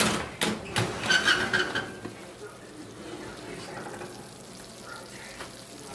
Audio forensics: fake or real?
real